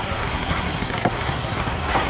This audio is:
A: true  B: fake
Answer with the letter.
B